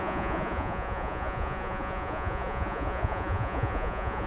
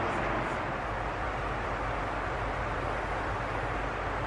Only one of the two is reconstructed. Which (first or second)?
first